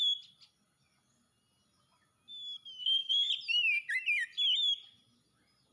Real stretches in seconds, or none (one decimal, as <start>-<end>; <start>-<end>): 0.0-2.8; 3.3-5.7